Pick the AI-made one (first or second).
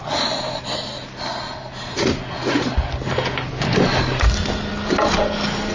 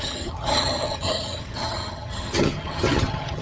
second